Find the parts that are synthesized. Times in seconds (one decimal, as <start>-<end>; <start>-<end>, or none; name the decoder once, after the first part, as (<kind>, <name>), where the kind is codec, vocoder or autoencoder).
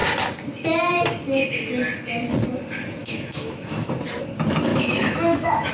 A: 3.0-3.9 (autoencoder, DAC-VAE); 4.7-5.7